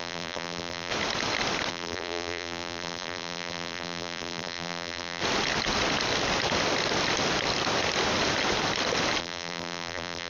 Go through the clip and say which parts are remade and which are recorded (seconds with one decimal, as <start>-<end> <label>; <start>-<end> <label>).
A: 0.0-0.9 remade; 0.9-1.7 recorded; 1.7-5.2 remade; 5.2-9.2 recorded; 9.2-10.3 remade